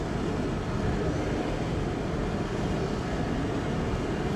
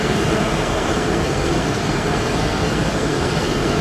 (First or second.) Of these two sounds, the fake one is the second